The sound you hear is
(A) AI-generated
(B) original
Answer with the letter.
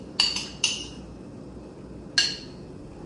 B